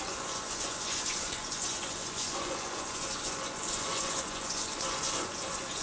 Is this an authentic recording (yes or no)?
no